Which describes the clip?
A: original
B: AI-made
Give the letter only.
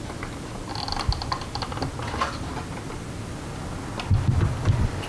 A